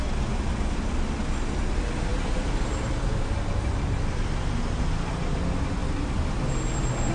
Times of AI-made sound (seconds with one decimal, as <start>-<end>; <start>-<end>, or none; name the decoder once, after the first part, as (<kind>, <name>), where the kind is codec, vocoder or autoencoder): none